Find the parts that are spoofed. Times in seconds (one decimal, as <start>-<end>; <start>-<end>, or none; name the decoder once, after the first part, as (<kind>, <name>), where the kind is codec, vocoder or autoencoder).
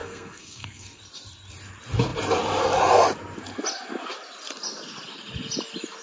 0.0-1.0 (codec, SNAC)